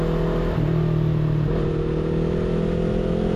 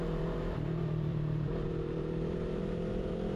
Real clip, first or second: first